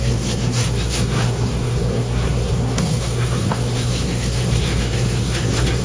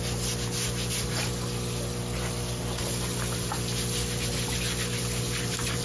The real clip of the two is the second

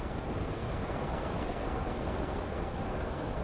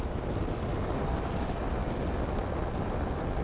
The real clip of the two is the second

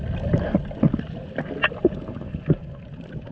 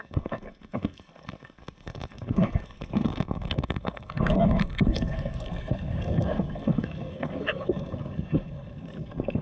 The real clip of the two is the first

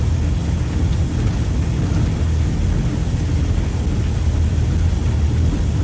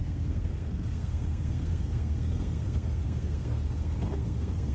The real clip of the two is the first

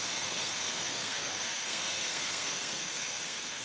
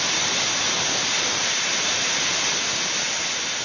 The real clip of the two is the second